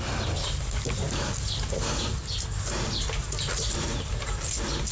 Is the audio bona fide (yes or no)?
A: yes